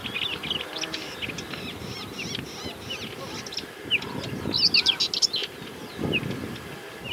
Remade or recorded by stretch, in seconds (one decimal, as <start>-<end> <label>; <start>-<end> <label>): 0.0-7.1 recorded